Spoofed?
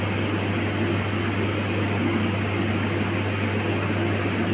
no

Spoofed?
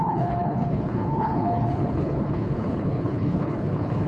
yes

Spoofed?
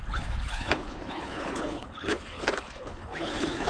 yes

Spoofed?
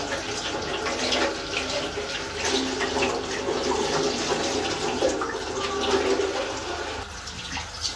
no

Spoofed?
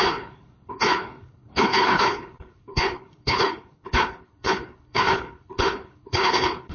yes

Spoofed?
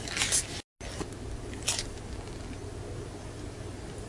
no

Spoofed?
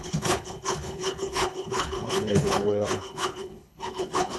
yes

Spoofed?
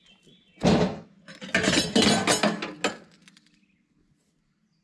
no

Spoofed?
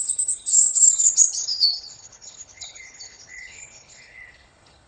yes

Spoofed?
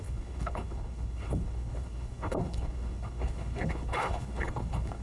yes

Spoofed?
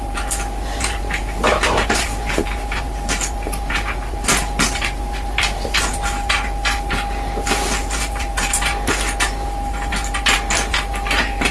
no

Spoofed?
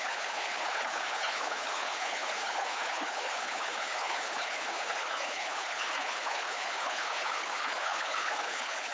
yes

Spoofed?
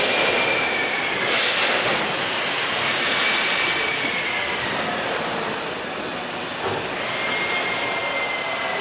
no